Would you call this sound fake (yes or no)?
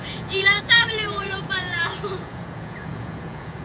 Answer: yes